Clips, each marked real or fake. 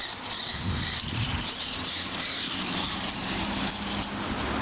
fake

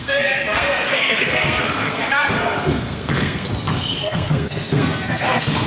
fake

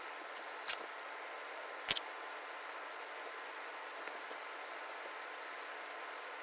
real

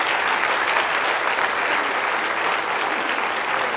real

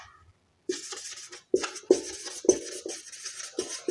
real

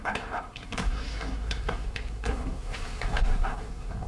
fake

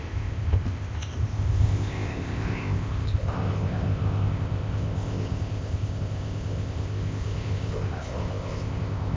fake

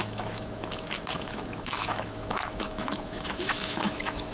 fake